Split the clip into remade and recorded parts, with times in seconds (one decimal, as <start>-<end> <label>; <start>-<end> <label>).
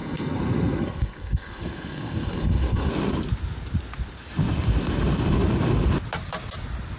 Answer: 0.0-2.9 remade; 2.9-7.0 recorded